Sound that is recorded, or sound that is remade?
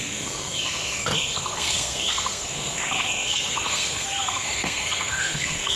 remade